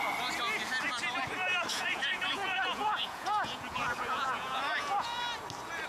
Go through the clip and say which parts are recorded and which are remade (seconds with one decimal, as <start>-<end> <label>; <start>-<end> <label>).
0.0-1.7 recorded; 1.7-5.2 remade; 5.2-5.9 recorded